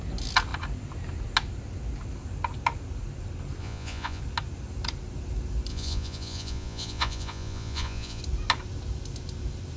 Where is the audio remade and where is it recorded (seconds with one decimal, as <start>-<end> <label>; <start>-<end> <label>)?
0.0-3.6 recorded; 3.6-4.2 remade; 4.2-5.7 recorded; 5.7-8.2 remade; 8.2-9.8 recorded